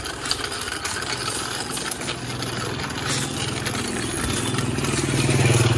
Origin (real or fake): real